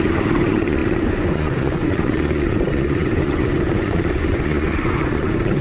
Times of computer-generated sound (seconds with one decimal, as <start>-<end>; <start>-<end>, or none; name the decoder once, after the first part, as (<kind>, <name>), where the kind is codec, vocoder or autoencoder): 0.0-5.6 (vocoder, Vocos)